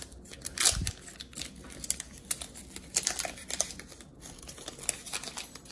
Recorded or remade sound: recorded